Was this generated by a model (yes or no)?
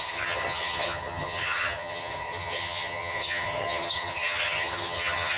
yes